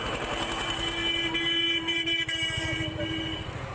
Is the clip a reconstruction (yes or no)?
no